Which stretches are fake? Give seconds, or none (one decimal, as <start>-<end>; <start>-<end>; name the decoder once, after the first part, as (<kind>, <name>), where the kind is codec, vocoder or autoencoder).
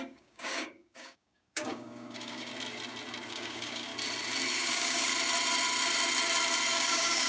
0.0-2.5 (codec, DAC); 3.3-3.9; 4.5-5.1; 6.7-7.3